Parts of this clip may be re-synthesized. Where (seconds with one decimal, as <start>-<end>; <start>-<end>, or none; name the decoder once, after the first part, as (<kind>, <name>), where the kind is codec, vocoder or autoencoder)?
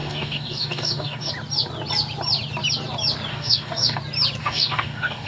0.0-1.3 (codec, DAC); 3.3-4.0; 4.4-5.3